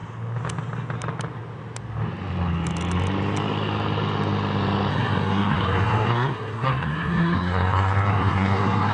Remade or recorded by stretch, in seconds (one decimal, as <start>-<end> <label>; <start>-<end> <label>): 0.0-4.9 recorded; 4.9-8.9 remade